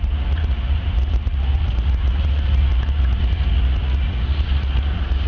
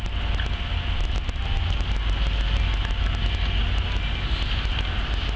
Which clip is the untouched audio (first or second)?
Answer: second